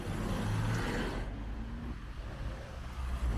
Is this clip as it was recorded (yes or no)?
yes